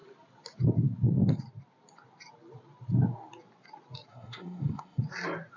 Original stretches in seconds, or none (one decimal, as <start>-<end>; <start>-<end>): 0.0-4.1; 5.0-5.6